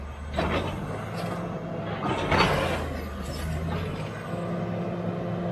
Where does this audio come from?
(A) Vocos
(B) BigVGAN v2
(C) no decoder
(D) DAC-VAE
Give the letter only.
C